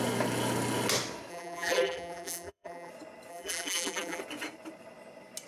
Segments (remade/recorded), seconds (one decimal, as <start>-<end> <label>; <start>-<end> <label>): 0.0-1.3 recorded; 1.3-2.9 remade; 2.9-3.3 recorded; 3.3-4.2 remade; 4.2-5.5 recorded